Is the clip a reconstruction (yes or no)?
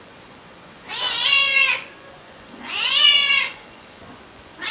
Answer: yes